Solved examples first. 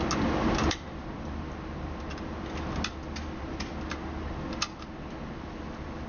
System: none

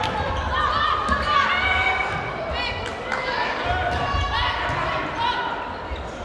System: none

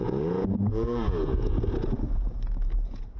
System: vocoder, Vocos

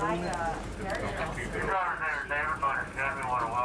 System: none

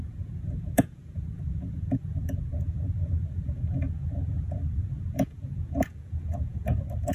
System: vocoder, Vocos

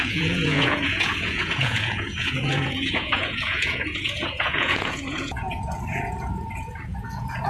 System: vocoder, Vocos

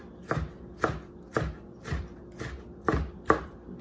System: none